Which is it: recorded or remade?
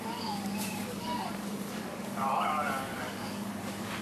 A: remade